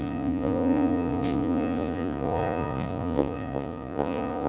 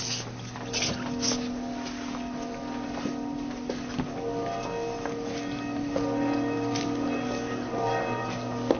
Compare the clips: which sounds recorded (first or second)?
second